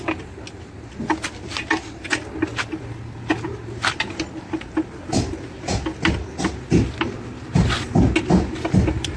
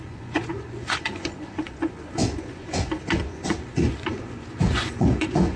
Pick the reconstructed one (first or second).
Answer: second